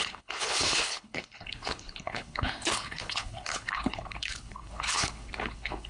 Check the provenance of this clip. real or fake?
fake